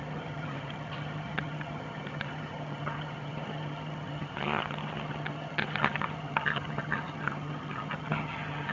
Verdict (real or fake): fake